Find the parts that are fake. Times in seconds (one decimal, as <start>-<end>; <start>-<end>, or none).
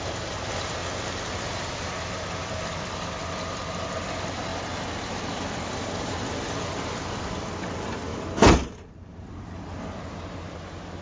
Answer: none